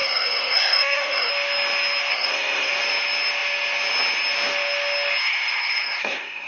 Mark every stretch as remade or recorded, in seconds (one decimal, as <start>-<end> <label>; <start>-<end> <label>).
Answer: 0.0-1.3 remade; 1.3-2.1 recorded; 2.1-2.7 remade; 2.7-5.2 recorded; 5.2-6.5 remade